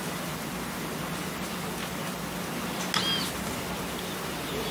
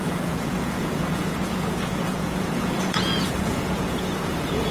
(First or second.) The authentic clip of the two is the first